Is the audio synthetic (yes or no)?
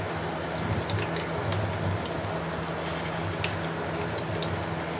no